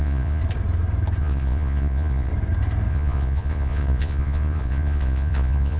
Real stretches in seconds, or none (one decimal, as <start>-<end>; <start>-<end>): 0.4-1.2; 2.3-2.9